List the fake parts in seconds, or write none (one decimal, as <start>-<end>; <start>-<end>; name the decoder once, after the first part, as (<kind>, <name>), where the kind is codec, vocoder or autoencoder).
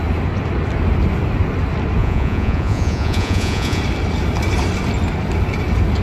2.0-3.8 (vocoder, Vocos)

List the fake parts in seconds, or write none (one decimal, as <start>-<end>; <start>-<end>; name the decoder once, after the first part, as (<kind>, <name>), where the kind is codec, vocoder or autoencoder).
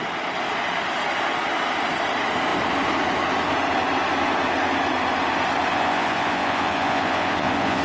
5.7-7.8 (vocoder, Vocos)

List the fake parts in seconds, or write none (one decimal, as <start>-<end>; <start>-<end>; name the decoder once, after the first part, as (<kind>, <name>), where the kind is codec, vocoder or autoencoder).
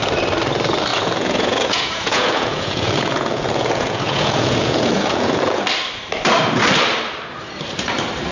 0.9-5.6 (vocoder, Vocos)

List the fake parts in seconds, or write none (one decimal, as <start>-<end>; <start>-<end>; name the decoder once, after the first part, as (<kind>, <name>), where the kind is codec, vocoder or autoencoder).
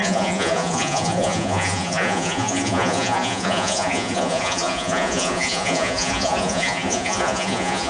0.0-7.9 (vocoder, Vocos)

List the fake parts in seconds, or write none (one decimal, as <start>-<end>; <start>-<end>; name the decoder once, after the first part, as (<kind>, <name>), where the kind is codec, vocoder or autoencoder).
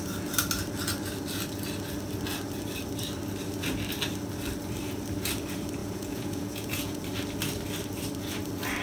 5.8-7.0 (vocoder, Vocos)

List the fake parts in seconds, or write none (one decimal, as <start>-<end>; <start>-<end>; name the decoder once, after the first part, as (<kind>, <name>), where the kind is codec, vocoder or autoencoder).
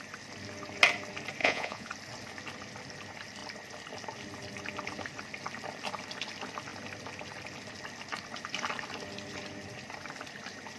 1.4-1.9 (vocoder, Vocos)